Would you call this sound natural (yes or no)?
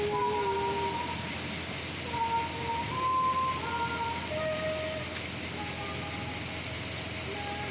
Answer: yes